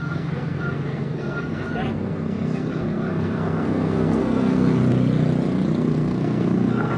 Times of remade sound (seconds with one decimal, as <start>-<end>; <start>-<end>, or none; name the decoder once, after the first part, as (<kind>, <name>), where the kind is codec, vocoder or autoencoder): 0.0-4.8 (codec, SNAC); 5.8-7.0

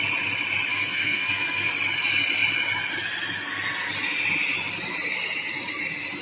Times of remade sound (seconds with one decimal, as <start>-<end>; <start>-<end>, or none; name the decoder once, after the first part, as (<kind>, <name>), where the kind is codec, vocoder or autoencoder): 0.7-1.7 (codec, SNAC)